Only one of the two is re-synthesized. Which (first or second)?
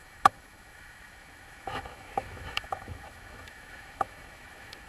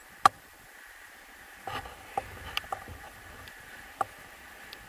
first